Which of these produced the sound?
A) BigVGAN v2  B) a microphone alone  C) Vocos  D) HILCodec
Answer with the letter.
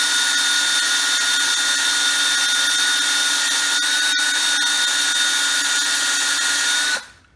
B